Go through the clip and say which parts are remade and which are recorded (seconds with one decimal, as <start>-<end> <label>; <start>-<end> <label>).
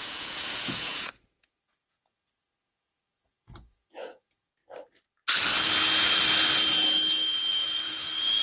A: 0.0-4.6 remade; 4.6-7.5 recorded; 7.5-8.4 remade